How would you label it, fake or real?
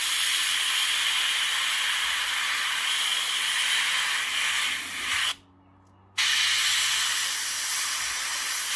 real